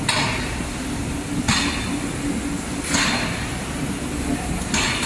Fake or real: real